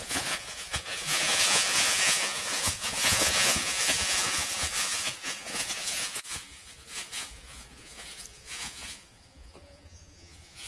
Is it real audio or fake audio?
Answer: fake